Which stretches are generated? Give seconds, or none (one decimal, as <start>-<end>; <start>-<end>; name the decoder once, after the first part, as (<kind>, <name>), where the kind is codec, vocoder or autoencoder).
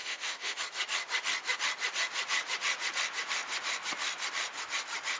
0.0-0.6 (autoencoder, DAC-VAE)